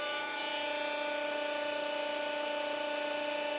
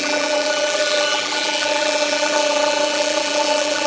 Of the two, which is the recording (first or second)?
first